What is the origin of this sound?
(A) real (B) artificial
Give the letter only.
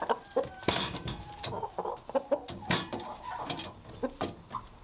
A